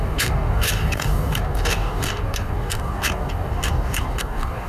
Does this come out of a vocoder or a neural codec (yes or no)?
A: yes